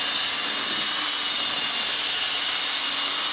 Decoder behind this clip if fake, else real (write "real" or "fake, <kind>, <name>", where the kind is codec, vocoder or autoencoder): real